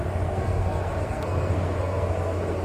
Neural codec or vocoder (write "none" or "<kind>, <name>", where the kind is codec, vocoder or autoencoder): codec, SNAC